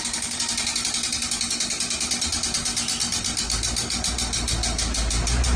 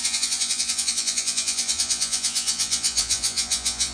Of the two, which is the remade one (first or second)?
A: second